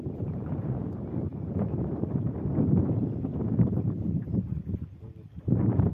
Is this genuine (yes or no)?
no